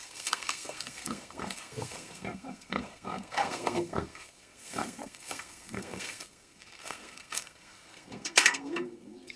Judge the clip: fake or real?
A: fake